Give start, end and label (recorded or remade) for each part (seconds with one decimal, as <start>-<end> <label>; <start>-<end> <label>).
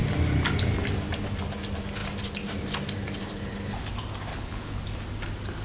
0.0-4.3 recorded; 4.3-4.8 remade; 4.8-5.6 recorded